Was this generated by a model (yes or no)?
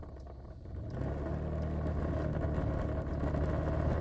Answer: no